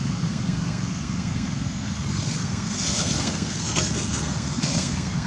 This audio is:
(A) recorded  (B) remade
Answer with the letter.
B